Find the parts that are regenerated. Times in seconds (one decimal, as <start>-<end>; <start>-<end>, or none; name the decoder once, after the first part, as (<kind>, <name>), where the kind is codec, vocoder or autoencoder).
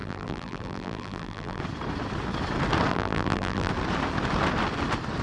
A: 0.0-1.6 (vocoder, BigVGAN v2); 2.9-3.7